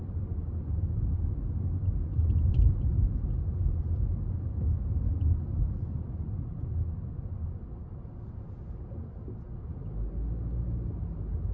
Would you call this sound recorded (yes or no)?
yes